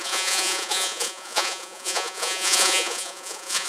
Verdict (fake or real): fake